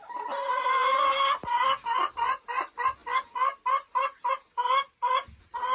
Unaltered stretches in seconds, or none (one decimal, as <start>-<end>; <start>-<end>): 0.0-5.7